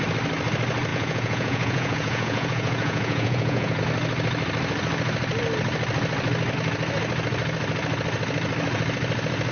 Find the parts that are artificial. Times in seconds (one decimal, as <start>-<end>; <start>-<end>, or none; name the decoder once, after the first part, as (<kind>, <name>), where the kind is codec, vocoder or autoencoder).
0.9-3.8 (vocoder, Vocos)